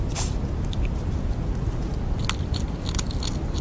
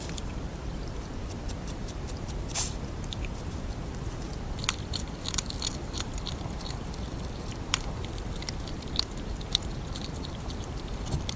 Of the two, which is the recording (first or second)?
first